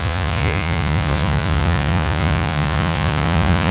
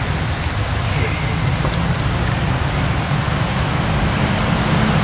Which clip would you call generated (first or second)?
first